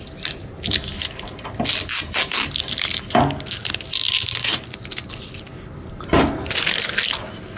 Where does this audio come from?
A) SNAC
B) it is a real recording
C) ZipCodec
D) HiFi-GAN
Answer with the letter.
B